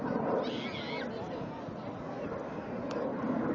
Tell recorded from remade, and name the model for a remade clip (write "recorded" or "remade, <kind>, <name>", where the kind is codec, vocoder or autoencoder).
recorded